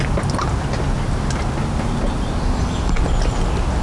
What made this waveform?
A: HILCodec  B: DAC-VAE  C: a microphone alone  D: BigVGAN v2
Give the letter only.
C